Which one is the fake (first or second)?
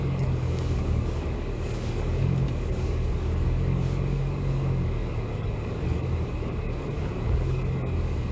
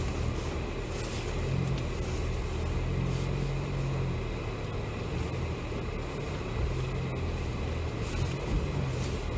first